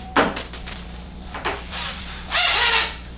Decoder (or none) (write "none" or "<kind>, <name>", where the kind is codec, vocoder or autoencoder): vocoder, BigVGAN v2